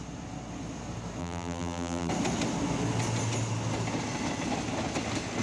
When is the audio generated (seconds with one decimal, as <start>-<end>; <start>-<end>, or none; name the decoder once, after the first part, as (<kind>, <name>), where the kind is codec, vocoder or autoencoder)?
1.2-2.1 (vocoder, BigVGAN v2)